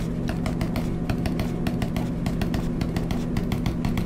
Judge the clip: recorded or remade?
recorded